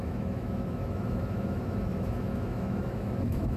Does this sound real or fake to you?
fake